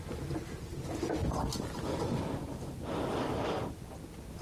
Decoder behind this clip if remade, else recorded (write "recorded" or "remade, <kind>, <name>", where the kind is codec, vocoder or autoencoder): recorded